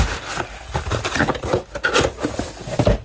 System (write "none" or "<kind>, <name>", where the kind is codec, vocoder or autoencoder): none